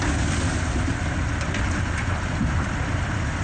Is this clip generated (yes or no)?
no